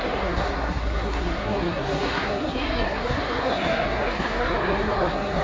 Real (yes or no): no